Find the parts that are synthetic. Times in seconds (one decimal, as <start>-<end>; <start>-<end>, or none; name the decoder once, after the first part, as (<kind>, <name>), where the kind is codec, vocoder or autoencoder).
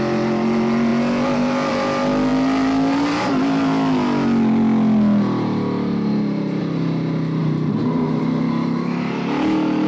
7.4-8.2 (vocoder, BigVGAN v2)